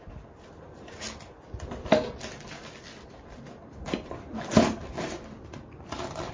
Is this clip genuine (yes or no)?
no